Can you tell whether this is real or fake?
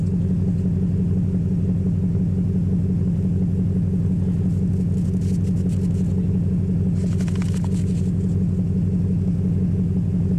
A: real